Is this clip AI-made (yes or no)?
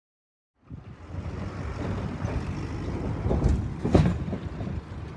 no